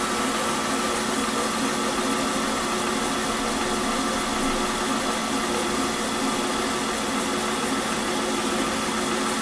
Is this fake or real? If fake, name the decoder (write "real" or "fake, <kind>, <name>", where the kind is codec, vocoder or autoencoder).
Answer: real